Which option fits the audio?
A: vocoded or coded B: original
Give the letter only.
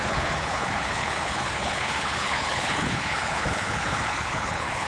A